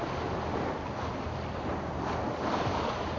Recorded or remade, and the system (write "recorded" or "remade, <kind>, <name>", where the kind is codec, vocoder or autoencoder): recorded